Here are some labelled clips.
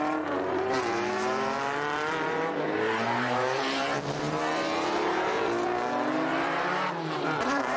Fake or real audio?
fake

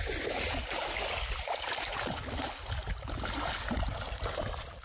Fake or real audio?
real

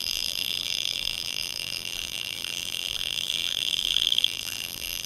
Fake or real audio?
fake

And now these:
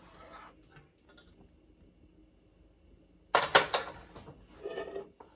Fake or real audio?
real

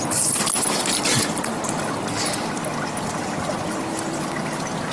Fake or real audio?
real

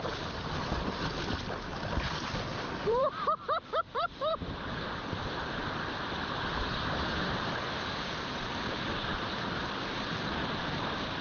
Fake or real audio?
fake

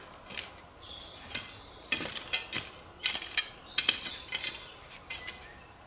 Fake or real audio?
real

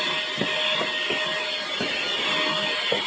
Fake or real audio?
real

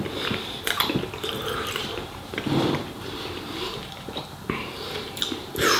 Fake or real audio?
fake